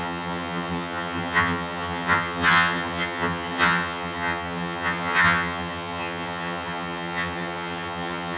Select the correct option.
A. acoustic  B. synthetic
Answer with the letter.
B